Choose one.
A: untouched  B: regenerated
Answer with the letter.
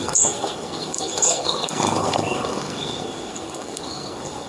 B